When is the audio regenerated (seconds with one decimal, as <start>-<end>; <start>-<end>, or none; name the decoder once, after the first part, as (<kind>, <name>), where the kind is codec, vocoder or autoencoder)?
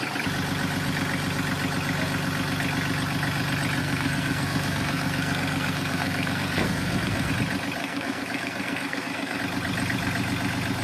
3.8-7.3 (codec, SNAC); 7.8-9.4